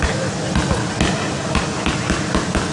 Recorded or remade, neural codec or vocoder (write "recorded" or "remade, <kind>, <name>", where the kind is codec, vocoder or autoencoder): recorded